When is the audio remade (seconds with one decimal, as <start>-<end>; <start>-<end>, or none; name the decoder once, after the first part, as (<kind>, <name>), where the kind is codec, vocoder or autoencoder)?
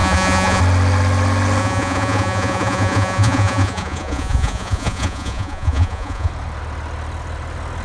0.0-0.6 (vocoder, Vocos); 1.6-6.3